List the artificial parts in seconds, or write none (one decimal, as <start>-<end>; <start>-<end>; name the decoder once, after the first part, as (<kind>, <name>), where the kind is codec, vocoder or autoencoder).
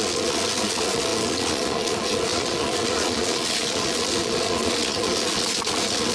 0.0-6.1 (vocoder, Vocos)